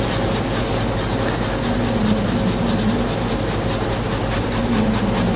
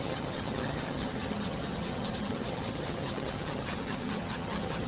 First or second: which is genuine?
first